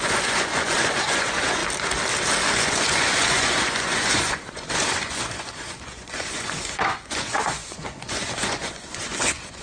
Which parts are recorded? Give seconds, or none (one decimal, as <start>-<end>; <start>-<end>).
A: 1.6-2.5